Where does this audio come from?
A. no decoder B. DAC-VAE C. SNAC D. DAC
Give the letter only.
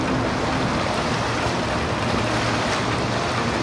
A